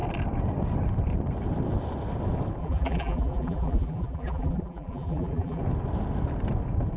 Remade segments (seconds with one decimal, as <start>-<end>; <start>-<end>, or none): 2.6-5.6